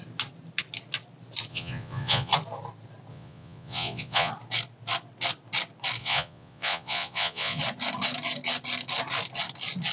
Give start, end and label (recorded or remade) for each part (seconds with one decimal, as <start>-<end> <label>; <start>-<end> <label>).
0.0-1.5 recorded; 1.5-2.3 remade; 2.3-3.1 recorded; 3.1-4.3 remade; 4.3-6.0 recorded; 6.0-7.6 remade; 7.6-9.9 recorded

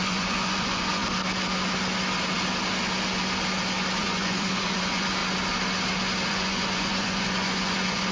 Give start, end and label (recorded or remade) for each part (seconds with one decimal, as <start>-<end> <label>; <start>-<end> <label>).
0.0-1.0 remade; 1.0-4.0 recorded; 4.0-5.2 remade; 5.2-6.3 recorded; 6.3-8.1 remade